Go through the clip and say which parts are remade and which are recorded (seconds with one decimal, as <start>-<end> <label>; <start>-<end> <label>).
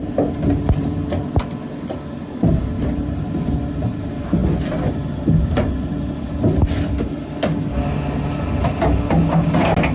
0.0-9.9 recorded